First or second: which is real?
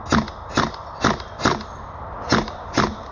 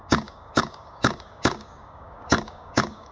first